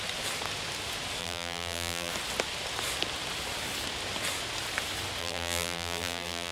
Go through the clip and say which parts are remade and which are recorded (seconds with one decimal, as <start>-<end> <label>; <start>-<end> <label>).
0.0-1.2 recorded; 1.2-2.1 remade; 2.1-5.2 recorded; 5.2-6.5 remade